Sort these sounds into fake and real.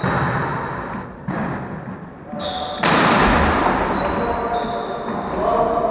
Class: real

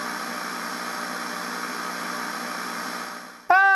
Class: real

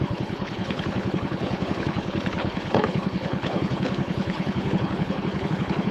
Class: fake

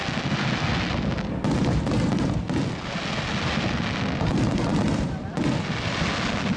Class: real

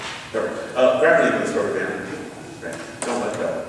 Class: real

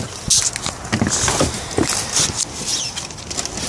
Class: real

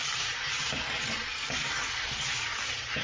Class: fake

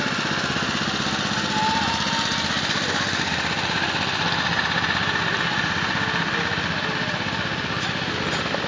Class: real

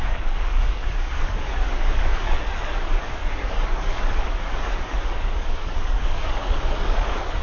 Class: fake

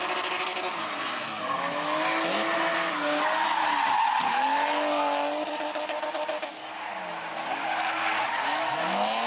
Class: real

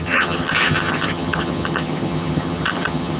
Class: fake